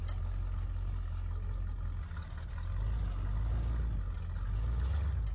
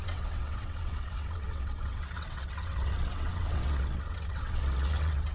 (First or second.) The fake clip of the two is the second